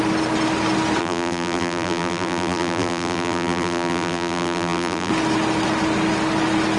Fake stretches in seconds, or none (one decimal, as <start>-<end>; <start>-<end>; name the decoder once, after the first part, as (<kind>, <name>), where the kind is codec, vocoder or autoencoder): 1.0-5.1 (vocoder, BigVGAN v2)